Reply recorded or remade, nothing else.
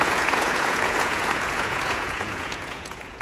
remade